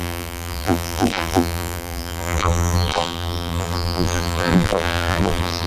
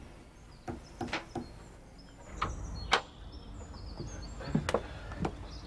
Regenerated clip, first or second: first